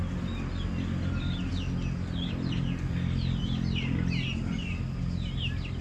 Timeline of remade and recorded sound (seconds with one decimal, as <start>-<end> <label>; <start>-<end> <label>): 0.0-5.8 recorded

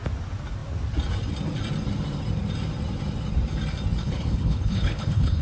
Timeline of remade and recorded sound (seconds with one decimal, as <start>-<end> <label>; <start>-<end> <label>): 0.0-4.0 recorded; 4.0-5.4 remade

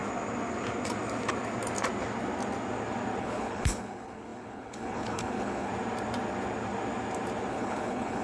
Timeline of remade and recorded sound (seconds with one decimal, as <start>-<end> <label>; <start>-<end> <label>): 0.0-3.2 recorded; 3.2-5.7 remade; 5.7-7.5 recorded; 7.5-8.2 remade

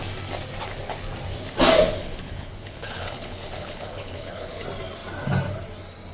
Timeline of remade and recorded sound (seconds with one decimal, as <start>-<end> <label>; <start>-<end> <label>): 0.0-2.0 recorded; 2.0-4.6 remade; 4.6-6.1 recorded

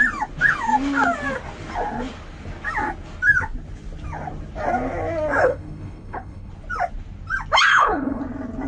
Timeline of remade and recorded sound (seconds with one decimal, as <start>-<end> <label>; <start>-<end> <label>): 0.0-5.4 recorded; 5.4-6.5 remade; 6.5-7.7 recorded; 7.7-8.2 remade; 8.2-8.7 recorded

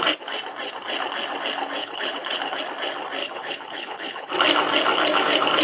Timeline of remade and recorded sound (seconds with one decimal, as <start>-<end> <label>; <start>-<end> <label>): 0.0-1.8 recorded; 1.8-2.6 remade; 2.6-3.2 recorded; 3.2-4.3 remade; 4.3-5.6 recorded